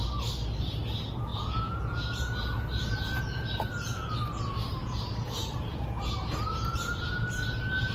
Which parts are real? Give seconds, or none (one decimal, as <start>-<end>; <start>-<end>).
0.0-1.3; 4.1-4.8; 7.1-7.9